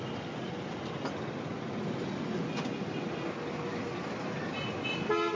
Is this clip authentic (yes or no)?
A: yes